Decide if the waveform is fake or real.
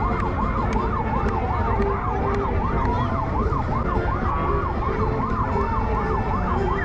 real